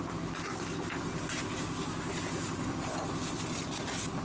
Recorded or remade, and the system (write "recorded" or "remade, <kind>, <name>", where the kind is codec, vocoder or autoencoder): recorded